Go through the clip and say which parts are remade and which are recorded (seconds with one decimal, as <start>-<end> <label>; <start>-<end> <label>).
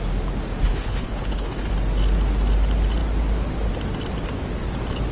0.0-0.6 recorded; 0.6-1.7 remade; 1.7-5.1 recorded